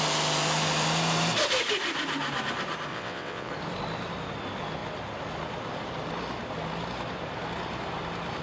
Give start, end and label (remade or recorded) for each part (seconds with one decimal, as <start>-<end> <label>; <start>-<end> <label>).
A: 0.0-2.9 recorded; 2.9-3.5 remade; 3.5-8.4 recorded